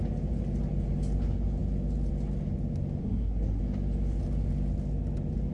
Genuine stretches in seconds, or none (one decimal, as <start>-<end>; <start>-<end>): 0.0-3.0; 3.6-5.5